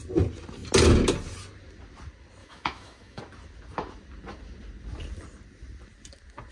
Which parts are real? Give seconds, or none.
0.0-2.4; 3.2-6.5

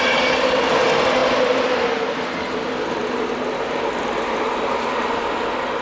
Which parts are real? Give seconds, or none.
0.0-5.8

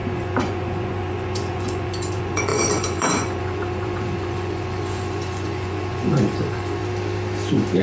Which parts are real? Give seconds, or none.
6.8-7.8

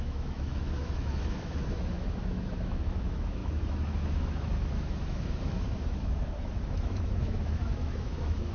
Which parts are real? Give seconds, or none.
none

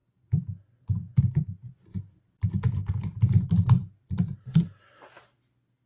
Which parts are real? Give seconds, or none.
0.0-5.9

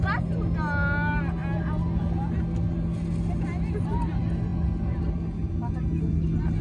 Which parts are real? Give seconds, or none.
0.0-6.6